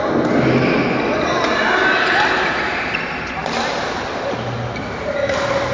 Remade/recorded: recorded